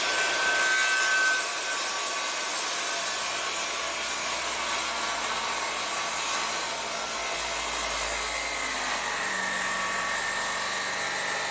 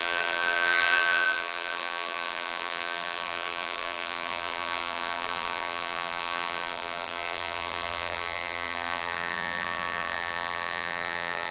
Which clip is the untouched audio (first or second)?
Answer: first